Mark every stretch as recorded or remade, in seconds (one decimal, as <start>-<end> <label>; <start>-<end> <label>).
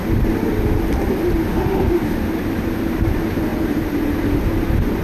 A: 0.0-1.5 recorded; 1.5-2.3 remade; 2.3-5.0 recorded